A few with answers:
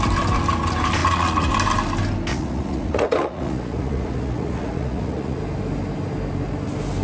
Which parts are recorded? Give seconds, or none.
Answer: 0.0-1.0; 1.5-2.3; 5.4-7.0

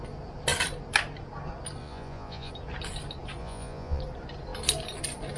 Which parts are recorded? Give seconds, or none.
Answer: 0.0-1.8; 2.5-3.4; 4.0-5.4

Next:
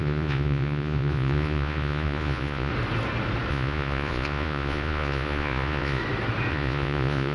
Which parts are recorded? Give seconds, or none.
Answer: 2.7-3.5; 6.0-6.5